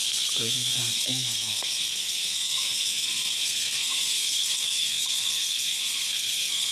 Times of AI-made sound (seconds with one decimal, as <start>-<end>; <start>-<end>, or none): 0.0-6.7